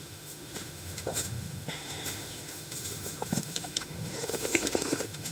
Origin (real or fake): fake